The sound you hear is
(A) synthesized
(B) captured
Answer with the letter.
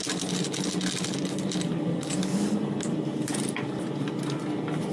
B